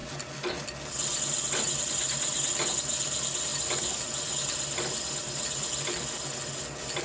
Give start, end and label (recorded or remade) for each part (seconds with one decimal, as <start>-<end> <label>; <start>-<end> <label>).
0.0-7.0 recorded